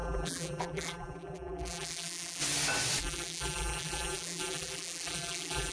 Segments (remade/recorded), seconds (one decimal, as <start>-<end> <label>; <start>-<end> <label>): 0.0-2.4 remade; 2.4-3.0 recorded; 3.0-5.7 remade